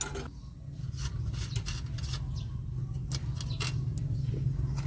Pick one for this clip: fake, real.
real